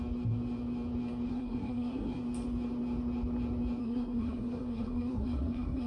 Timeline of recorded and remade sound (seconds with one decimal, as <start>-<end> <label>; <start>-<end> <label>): 0.0-1.3 recorded; 1.3-2.2 remade; 2.2-3.8 recorded; 3.8-5.9 remade